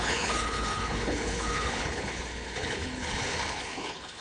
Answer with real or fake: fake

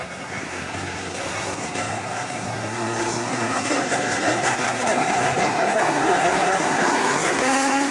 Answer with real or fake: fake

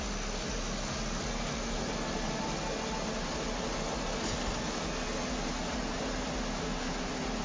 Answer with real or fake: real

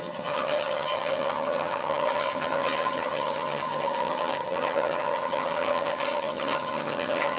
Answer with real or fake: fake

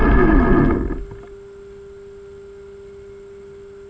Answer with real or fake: real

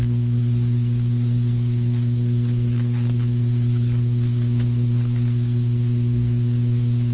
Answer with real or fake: fake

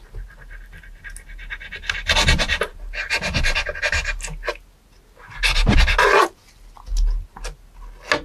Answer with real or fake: real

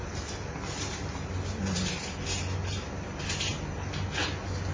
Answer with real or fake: real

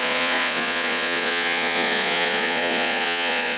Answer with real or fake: fake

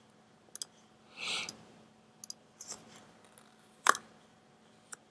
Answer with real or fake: real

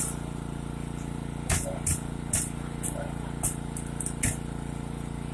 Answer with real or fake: real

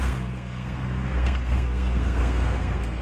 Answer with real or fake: fake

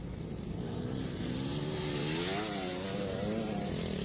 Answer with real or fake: real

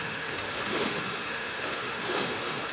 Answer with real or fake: fake